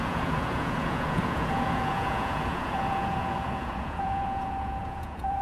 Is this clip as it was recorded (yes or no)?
no